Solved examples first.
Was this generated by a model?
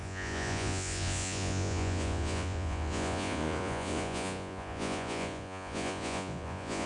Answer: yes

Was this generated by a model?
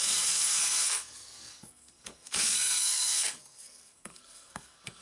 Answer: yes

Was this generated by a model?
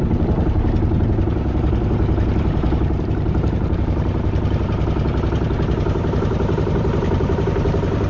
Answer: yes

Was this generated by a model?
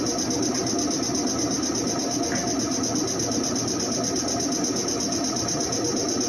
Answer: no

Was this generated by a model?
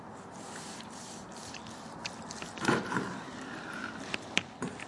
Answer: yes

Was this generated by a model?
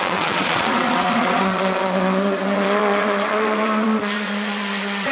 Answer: yes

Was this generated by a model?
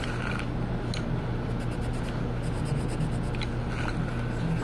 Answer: no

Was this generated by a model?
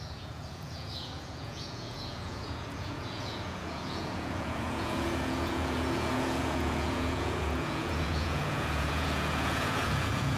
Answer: yes